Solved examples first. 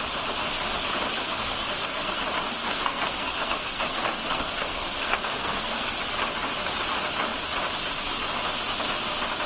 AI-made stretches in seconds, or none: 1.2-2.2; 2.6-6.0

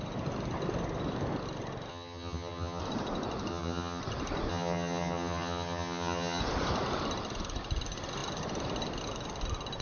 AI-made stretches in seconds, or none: 1.9-2.8; 3.5-4.0; 4.5-6.4